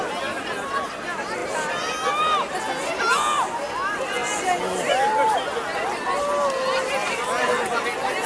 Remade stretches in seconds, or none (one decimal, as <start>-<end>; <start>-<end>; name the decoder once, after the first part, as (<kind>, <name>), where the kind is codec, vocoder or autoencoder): 1.4-2.2 (vocoder, BigVGAN v2); 4.2-4.9; 7.0-7.8